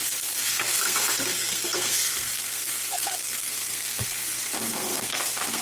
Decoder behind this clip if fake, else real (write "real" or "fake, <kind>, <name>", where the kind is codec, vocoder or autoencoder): fake, codec, SNAC